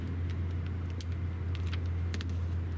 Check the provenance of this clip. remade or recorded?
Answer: recorded